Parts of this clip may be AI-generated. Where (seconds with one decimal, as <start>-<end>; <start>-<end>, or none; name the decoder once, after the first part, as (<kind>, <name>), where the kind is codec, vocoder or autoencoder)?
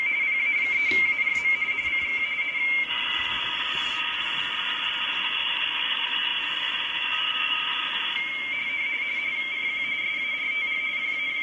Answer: 0.0-2.1 (vocoder, BigVGAN v2); 5.5-11.4